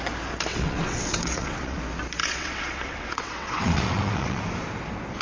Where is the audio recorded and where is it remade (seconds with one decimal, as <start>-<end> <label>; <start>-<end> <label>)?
0.0-0.5 recorded; 0.5-1.8 remade; 1.8-2.2 recorded; 2.2-4.4 remade; 4.4-5.2 recorded